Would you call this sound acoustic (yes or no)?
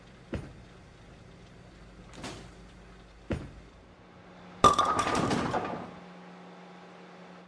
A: yes